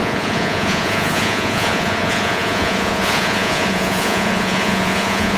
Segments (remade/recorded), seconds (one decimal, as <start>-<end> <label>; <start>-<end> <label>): 0.0-5.4 remade